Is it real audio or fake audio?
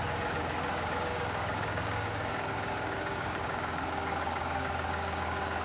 fake